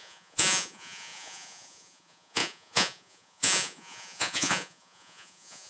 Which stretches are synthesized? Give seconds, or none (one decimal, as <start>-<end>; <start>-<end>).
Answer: 0.0-5.7